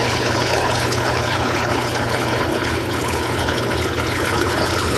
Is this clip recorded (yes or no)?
no